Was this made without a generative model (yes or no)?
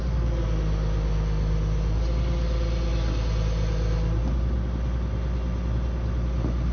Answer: yes